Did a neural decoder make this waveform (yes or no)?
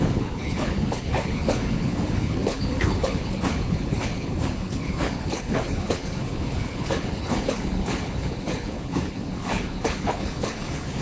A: yes